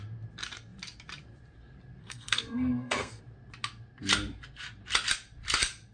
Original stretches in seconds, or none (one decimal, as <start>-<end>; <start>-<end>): 0.0-2.0; 3.2-5.9